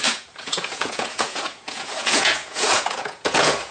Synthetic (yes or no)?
yes